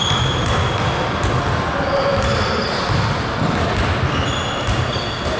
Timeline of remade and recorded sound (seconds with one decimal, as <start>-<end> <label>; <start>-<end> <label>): 0.0-5.4 recorded